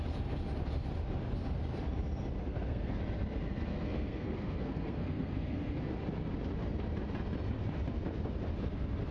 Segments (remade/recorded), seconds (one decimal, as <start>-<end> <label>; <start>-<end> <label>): 0.0-2.4 recorded; 2.4-3.0 remade; 3.0-3.7 recorded; 3.7-5.8 remade; 5.8-9.1 recorded